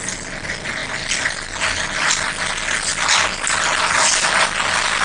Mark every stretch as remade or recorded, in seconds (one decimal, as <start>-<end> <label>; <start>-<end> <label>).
0.0-5.0 recorded